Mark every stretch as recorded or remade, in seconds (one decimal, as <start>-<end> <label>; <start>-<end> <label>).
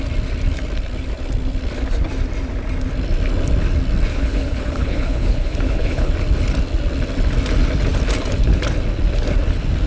0.0-4.1 recorded; 4.1-6.1 remade; 6.1-9.9 recorded